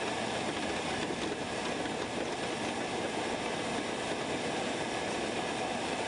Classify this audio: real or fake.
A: real